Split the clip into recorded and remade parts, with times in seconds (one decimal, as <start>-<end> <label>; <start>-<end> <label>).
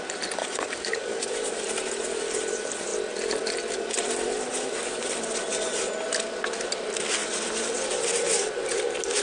0.0-0.4 recorded; 0.4-1.3 remade; 1.3-9.2 recorded